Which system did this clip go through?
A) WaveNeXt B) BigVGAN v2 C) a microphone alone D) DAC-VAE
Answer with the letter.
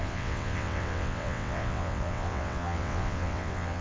A